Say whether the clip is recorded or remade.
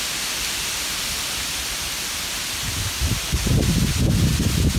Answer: recorded